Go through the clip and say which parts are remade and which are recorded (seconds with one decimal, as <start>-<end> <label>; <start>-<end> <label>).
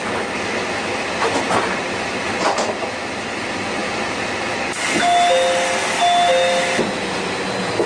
0.0-7.9 recorded